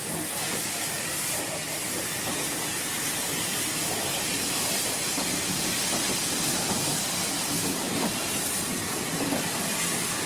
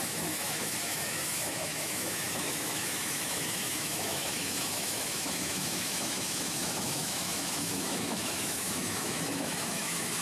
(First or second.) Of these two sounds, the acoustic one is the first